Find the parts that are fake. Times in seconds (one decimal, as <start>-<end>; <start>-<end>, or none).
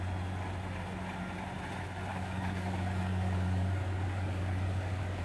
2.1-5.2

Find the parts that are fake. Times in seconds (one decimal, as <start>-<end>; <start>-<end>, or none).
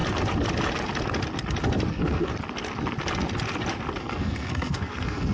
1.9-2.3; 4.0-5.3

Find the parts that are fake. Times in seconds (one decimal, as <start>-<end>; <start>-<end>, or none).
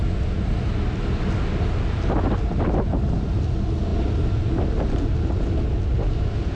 none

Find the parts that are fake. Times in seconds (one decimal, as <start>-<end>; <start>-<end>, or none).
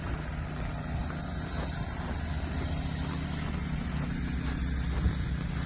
none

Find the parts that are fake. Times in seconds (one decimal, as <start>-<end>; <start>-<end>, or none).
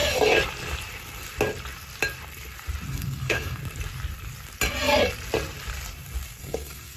2.9-3.6; 6.4-7.0